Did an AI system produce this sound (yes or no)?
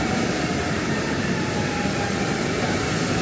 yes